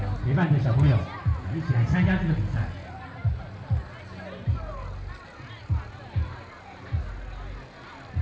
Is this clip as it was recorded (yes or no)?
yes